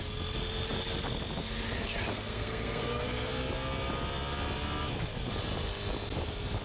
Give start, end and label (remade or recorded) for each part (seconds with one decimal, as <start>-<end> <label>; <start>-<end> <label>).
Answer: 0.0-2.1 recorded; 2.1-3.3 remade; 3.3-6.6 recorded